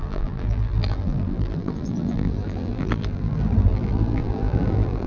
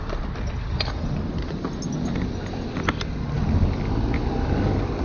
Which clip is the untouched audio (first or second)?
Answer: second